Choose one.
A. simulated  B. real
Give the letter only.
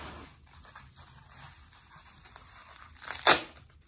B